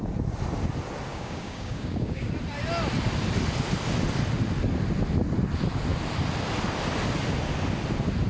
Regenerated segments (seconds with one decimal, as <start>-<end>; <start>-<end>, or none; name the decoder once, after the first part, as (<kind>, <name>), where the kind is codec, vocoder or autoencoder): 1.1-2.3 (codec, DAC)